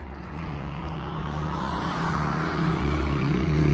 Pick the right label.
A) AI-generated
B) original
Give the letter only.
A